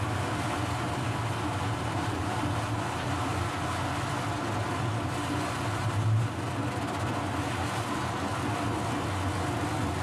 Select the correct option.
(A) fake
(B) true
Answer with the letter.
B